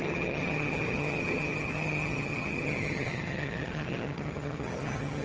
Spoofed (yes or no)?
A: yes